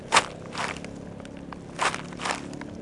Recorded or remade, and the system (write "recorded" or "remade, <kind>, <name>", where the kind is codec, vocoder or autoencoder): recorded